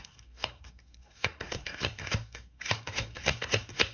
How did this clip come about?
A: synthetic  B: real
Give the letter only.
A